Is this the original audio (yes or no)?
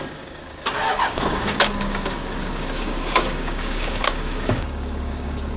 no